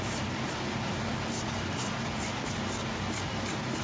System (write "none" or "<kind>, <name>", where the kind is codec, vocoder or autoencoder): none